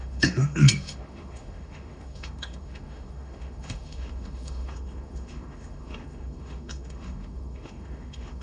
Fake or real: fake